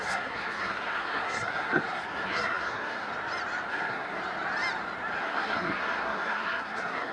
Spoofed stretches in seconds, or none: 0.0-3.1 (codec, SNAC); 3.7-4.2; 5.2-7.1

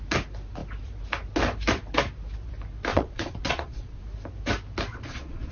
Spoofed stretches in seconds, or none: 2.9-4.0 (vocoder, Vocos); 4.9-5.5

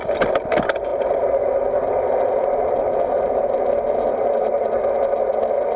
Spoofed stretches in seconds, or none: none

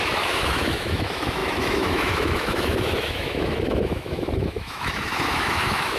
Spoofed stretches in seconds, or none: 0.0-6.0 (autoencoder, DAC-VAE)